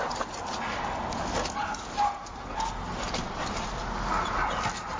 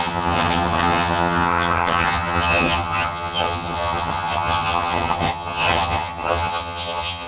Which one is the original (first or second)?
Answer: first